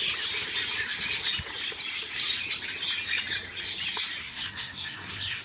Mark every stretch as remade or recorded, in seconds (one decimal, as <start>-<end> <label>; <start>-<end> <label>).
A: 0.0-4.2 recorded; 4.2-5.4 remade